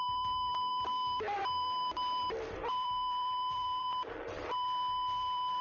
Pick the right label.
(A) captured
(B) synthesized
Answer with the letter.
B